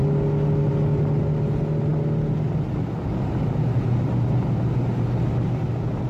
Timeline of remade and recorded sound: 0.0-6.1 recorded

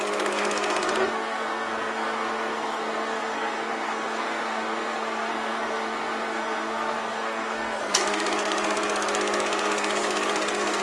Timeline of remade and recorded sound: 0.0-10.8 remade

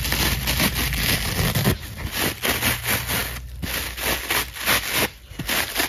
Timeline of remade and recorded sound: 0.0-5.9 recorded

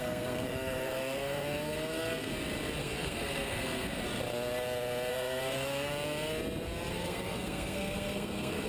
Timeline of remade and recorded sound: 0.0-2.3 remade; 2.3-2.8 recorded; 2.8-4.0 remade; 4.0-5.1 recorded; 5.1-5.9 remade; 5.9-6.9 recorded; 6.9-8.7 remade

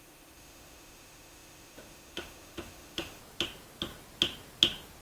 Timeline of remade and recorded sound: 0.0-3.2 remade; 3.2-5.0 recorded